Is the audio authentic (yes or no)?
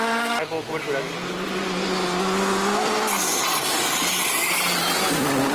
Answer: yes